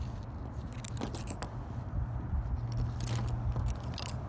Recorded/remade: recorded